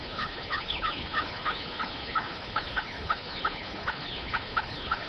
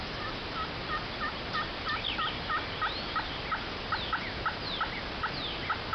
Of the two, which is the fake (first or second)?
first